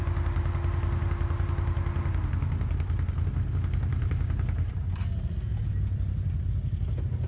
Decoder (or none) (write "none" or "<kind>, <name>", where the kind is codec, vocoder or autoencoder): none